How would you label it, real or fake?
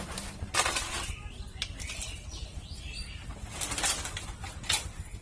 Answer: real